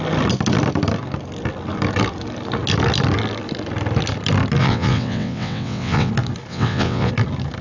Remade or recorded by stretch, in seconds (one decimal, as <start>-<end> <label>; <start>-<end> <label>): 0.0-4.6 recorded; 4.6-6.1 remade; 6.1-6.5 recorded; 6.5-7.1 remade; 7.1-7.6 recorded